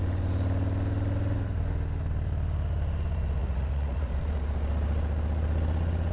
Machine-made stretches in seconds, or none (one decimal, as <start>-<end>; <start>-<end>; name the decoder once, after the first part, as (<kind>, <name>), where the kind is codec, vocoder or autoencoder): 3.4-4.1 (vocoder, Vocos)